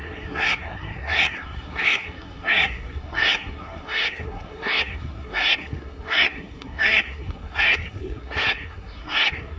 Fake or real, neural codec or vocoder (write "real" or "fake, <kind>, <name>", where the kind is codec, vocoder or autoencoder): fake, codec, SNAC